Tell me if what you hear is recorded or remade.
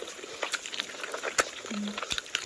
recorded